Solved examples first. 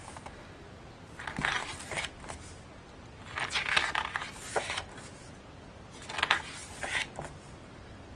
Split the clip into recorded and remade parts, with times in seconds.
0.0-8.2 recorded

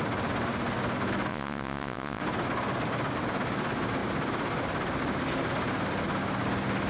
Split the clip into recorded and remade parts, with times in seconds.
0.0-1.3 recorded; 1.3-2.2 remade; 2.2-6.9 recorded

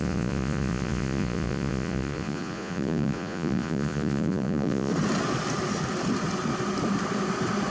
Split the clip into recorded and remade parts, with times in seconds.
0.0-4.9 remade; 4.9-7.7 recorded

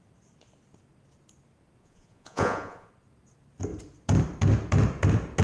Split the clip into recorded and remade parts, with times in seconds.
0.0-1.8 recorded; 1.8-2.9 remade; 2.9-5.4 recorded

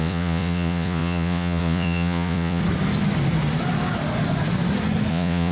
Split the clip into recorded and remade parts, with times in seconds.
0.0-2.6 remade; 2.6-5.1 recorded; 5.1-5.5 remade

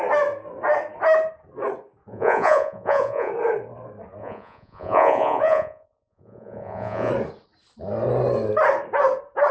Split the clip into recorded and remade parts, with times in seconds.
0.0-2.1 recorded; 2.1-3.3 remade; 3.3-4.2 recorded; 4.2-7.1 remade; 7.1-9.5 recorded

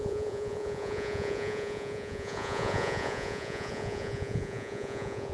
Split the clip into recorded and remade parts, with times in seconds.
0.0-5.3 remade